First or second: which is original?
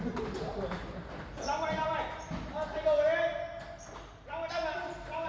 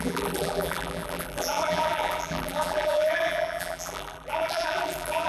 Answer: first